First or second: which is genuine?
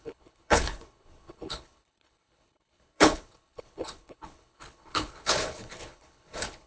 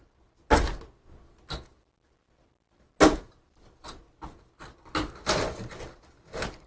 second